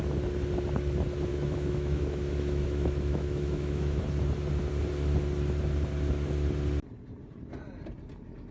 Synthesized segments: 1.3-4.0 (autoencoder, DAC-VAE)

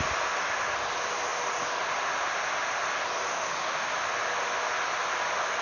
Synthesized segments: 3.3-3.9 (autoencoder, DAC-VAE)

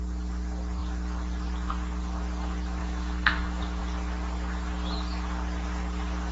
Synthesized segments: 2.8-3.8 (autoencoder, DAC-VAE)

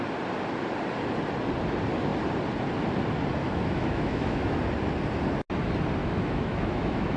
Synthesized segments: 3.4-4.6 (autoencoder, DAC-VAE); 6.0-7.2

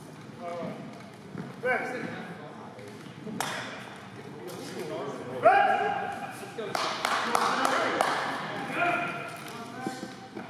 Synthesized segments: 2.0-3.1 (autoencoder, DAC-VAE); 5.3-6.8